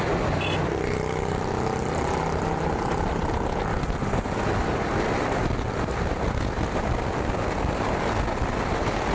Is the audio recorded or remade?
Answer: recorded